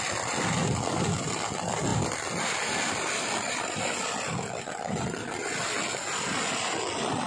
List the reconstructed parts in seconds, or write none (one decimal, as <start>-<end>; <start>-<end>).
none